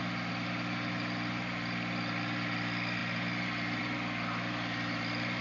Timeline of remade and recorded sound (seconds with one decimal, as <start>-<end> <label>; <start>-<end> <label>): 0.0-5.4 recorded